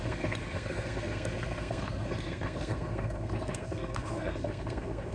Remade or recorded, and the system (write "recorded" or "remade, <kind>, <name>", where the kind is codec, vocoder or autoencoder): remade, codec, SNAC